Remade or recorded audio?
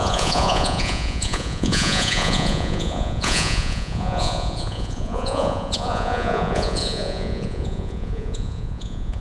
remade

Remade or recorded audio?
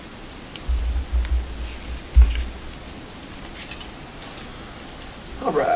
recorded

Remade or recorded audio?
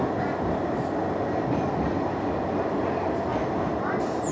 recorded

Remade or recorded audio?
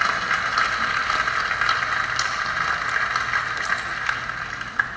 recorded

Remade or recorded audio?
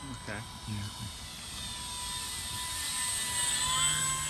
recorded